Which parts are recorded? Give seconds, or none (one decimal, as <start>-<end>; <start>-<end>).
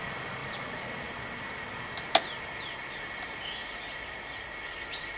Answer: 0.0-5.2